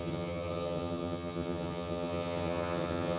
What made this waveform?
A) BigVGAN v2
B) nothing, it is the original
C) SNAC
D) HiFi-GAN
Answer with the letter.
D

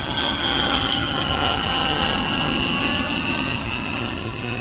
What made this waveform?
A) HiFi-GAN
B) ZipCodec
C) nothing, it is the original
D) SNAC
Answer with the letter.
A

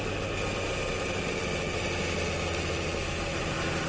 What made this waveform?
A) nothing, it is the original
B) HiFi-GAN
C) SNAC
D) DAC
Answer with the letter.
A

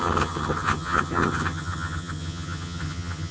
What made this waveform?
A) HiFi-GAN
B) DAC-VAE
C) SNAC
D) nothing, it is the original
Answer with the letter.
A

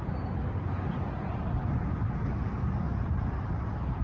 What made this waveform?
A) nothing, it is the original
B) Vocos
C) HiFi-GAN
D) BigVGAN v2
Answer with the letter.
A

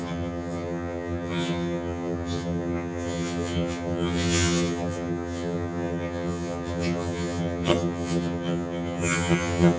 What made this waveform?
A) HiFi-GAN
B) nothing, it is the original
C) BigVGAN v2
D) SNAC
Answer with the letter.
A